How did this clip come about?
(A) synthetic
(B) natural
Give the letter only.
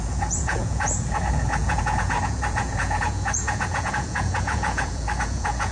A